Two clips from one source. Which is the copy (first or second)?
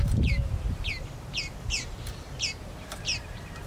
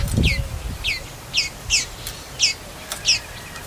first